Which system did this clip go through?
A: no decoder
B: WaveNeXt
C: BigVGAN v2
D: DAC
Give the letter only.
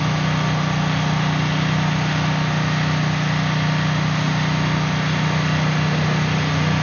A